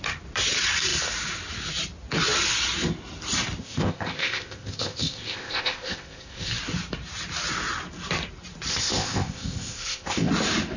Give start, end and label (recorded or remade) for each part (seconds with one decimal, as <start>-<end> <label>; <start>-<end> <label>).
0.0-3.6 recorded; 3.6-6.5 remade; 6.5-8.7 recorded; 8.7-10.3 remade; 10.3-10.8 recorded